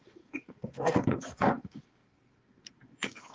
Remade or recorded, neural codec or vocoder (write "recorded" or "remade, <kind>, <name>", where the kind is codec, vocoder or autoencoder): remade, codec, SNAC